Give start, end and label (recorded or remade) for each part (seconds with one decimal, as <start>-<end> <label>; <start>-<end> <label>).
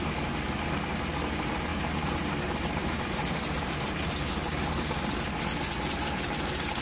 0.0-1.7 recorded; 1.7-4.1 remade; 4.1-6.8 recorded